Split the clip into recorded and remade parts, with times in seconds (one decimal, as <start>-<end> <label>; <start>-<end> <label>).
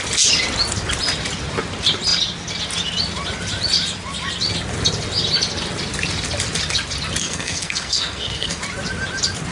0.0-7.2 recorded; 7.2-8.6 remade; 8.6-9.5 recorded